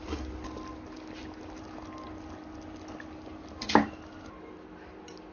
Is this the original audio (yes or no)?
yes